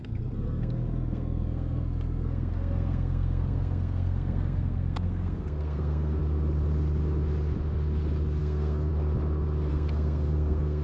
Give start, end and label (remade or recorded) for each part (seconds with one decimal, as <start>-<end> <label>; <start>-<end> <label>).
0.0-6.2 remade; 6.2-8.4 recorded; 8.4-8.9 remade; 8.9-9.7 recorded; 9.7-10.8 remade